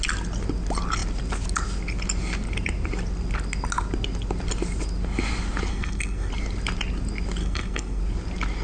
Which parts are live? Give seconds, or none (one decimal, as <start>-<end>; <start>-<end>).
0.0-5.7; 6.3-7.4; 8.0-8.6